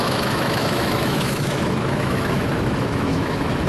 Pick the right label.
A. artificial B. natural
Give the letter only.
A